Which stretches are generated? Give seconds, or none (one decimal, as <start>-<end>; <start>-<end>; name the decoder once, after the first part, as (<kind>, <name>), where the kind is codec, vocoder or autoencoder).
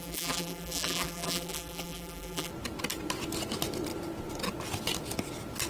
0.0-2.5 (vocoder, BigVGAN v2)